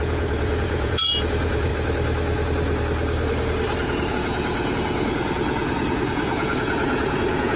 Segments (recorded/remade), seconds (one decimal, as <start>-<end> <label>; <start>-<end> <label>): 0.0-1.7 remade; 1.7-4.1 recorded; 4.1-7.6 remade